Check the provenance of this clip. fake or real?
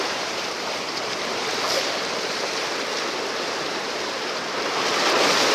fake